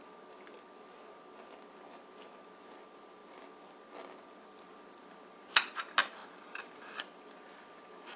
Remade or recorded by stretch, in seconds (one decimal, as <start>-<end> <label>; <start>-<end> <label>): 0.0-8.2 recorded